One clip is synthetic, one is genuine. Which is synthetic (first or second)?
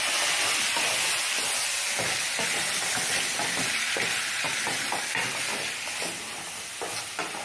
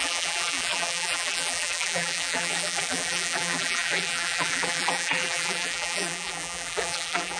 second